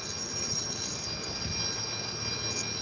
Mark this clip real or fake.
real